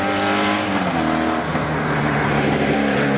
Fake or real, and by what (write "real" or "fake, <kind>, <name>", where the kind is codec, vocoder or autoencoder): real